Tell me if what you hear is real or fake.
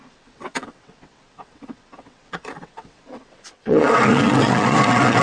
fake